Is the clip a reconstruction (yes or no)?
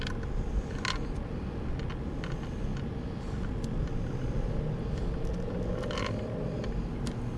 no